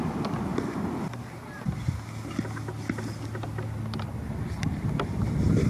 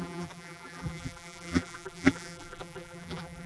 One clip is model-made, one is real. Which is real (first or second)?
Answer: first